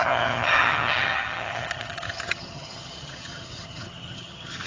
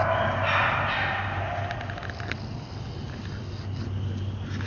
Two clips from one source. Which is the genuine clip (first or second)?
second